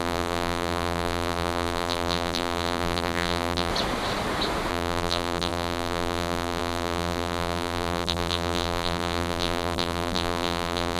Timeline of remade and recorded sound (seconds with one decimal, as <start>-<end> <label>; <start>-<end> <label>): 0.0-3.7 remade; 3.7-4.7 recorded; 4.7-11.0 remade